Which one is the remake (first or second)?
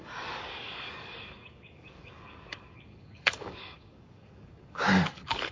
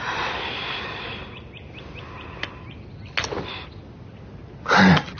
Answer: first